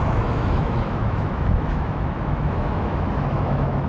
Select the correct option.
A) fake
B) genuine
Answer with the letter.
A